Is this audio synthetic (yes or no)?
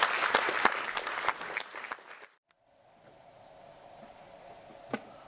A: no